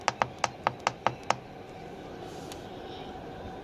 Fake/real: real